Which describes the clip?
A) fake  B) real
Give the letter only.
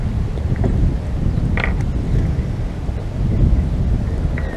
B